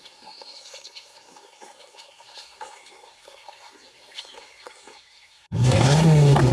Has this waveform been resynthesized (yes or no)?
yes